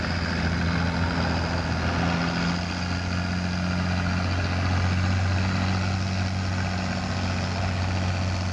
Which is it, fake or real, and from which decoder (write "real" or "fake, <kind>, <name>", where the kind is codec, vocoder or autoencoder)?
real